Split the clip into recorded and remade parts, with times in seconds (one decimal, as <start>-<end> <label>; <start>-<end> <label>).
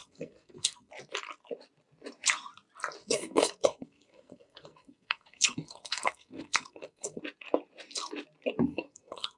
0.0-0.9 remade; 0.9-3.0 recorded; 3.0-7.2 remade; 7.2-8.7 recorded; 8.7-9.4 remade